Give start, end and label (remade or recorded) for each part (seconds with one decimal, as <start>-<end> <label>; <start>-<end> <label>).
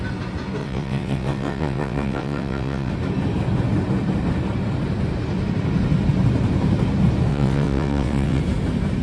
0.0-0.6 recorded; 0.6-2.9 remade; 2.9-7.3 recorded; 7.3-8.4 remade; 8.4-9.0 recorded